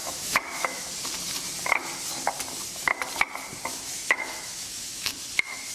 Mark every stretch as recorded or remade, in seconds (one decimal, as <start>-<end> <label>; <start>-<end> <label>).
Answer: 0.0-0.9 remade; 0.9-3.7 recorded; 3.7-5.1 remade; 5.1-5.7 recorded